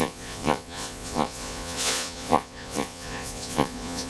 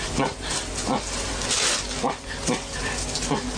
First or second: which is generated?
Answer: first